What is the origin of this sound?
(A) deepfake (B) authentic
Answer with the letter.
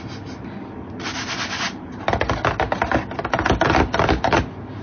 B